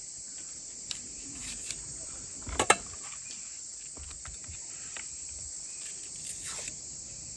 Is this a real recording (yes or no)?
no